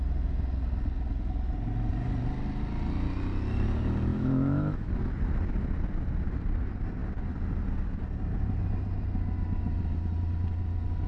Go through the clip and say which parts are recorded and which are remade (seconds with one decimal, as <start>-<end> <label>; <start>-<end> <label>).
0.0-4.1 recorded; 4.1-4.9 remade; 4.9-11.1 recorded

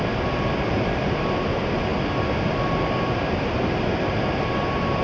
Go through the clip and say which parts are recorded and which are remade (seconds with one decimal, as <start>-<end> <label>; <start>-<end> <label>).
0.0-5.0 recorded

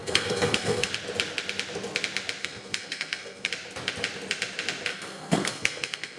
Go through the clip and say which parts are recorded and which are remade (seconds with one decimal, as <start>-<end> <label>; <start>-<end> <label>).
0.0-0.9 remade; 0.9-2.4 recorded; 2.4-3.5 remade; 3.5-4.9 recorded; 4.9-6.2 remade